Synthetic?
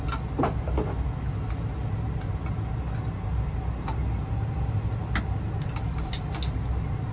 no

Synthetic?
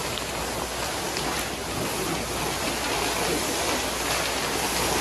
no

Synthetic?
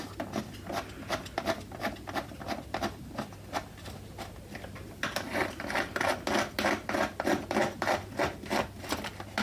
no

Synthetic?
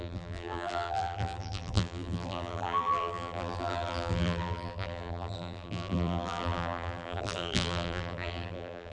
yes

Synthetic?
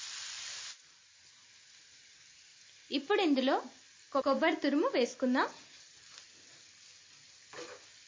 no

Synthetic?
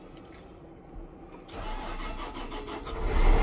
no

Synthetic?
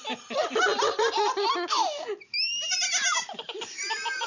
no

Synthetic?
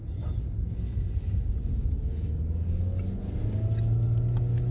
no